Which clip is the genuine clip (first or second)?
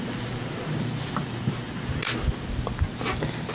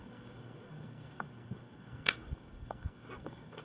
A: first